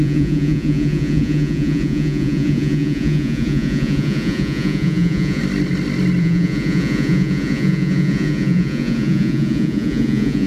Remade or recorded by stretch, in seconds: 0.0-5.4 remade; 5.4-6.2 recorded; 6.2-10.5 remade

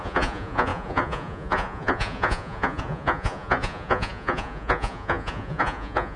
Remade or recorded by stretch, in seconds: 0.0-6.2 remade

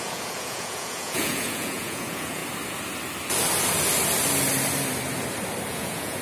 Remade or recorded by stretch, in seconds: 0.0-2.4 remade; 2.4-5.7 recorded; 5.7-6.2 remade

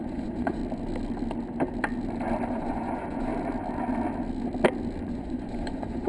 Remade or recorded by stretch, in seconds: 0.0-0.6 remade; 0.6-2.5 recorded; 2.5-3.3 remade; 3.3-5.0 recorded; 5.0-6.1 remade